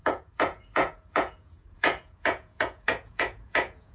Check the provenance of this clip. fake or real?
fake